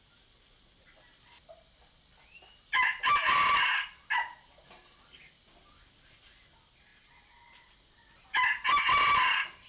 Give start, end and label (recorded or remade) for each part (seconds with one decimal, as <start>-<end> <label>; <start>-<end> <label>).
0.0-9.7 recorded